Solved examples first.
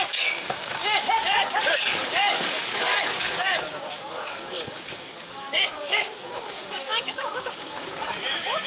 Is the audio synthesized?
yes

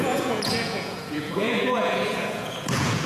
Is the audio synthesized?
yes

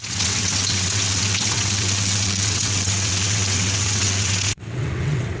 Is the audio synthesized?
yes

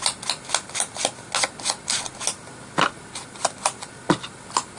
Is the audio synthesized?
no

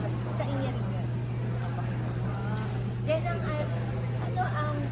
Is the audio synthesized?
no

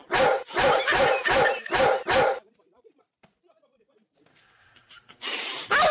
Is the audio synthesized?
yes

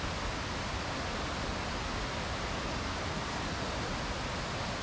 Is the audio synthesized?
no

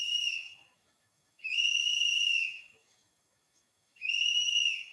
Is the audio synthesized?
yes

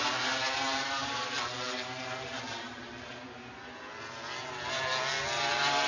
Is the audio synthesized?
no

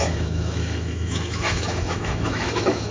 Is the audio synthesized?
yes